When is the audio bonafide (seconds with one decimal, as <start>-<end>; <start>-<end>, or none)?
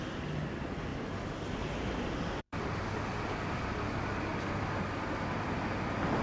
0.0-0.9; 3.0-4.3; 4.8-6.2